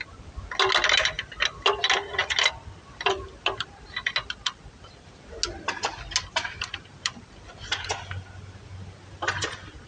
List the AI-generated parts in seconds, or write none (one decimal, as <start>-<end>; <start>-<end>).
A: none